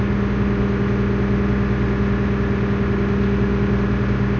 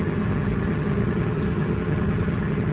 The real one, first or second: first